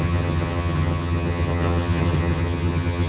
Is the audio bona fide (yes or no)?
no